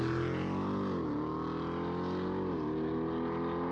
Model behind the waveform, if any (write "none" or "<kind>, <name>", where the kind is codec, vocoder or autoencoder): none